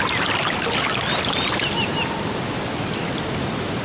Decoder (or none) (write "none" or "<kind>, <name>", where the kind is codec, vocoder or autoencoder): none